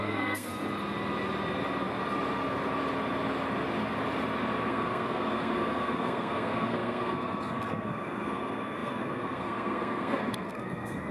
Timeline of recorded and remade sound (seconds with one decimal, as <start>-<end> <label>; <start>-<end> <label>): 0.0-0.5 remade; 0.5-4.7 recorded; 4.7-11.1 remade

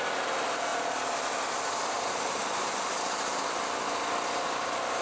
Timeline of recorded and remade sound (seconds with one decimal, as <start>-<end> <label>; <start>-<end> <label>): 0.0-5.0 recorded

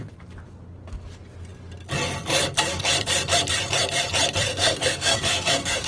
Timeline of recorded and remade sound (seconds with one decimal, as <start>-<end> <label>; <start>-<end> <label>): 0.0-4.5 recorded; 4.5-5.9 remade

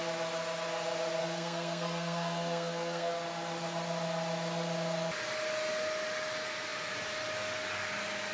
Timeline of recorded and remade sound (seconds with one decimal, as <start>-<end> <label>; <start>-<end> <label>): 0.0-1.2 recorded; 1.2-3.1 remade; 3.1-8.3 recorded

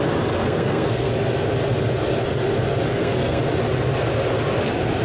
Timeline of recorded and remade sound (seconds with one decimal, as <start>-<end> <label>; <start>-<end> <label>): 0.0-0.4 recorded; 0.4-1.1 remade; 1.1-2.9 recorded; 2.9-3.4 remade; 3.4-5.0 recorded

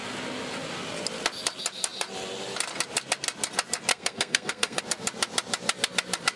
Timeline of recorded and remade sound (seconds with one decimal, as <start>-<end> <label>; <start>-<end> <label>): 0.0-3.9 recorded; 3.9-4.8 remade; 4.8-6.4 recorded